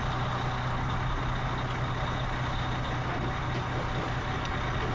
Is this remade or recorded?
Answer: recorded